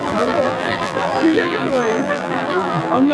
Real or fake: fake